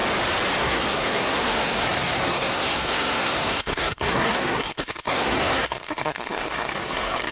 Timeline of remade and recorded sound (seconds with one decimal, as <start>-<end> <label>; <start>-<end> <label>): 0.0-0.6 recorded; 0.6-7.3 remade